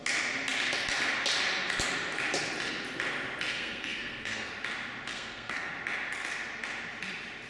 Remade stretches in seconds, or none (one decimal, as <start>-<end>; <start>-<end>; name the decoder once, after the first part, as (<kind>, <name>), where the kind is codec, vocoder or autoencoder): 3.5-4.5 (codec, SNAC); 5.1-5.7